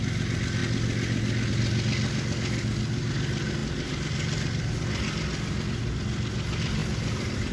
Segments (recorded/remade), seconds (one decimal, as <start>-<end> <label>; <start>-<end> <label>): 0.0-7.5 recorded

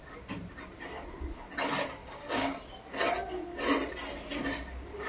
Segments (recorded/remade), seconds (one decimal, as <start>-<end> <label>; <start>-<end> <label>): 0.0-2.0 recorded; 2.0-2.6 remade; 2.6-5.1 recorded

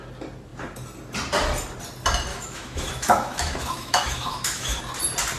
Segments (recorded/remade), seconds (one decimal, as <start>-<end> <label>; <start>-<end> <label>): 0.0-2.3 recorded; 2.3-4.8 remade; 4.8-5.4 recorded

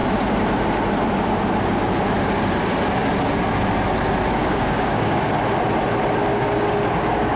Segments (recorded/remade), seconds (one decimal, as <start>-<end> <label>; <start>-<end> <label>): 0.0-4.4 recorded; 4.4-5.3 remade; 5.3-6.3 recorded; 6.3-7.4 remade

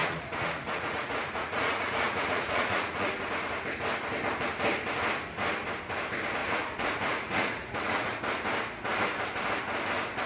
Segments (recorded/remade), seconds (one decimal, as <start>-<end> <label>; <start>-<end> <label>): 0.0-3.1 remade; 3.1-6.4 recorded; 6.4-8.2 remade; 8.2-10.3 recorded